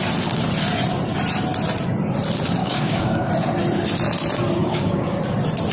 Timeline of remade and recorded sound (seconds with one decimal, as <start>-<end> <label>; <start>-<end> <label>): 0.0-2.6 recorded; 2.6-3.3 remade; 3.3-4.6 recorded; 4.6-5.2 remade; 5.2-5.7 recorded